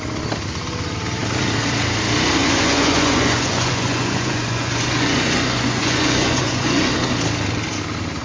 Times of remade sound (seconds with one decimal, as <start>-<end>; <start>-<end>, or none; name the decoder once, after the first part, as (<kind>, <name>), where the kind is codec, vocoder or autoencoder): 2.4-6.9 (vocoder, Vocos)